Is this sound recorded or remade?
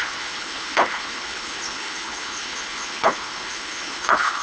remade